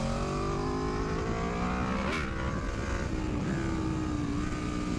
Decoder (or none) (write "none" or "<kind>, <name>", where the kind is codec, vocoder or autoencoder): none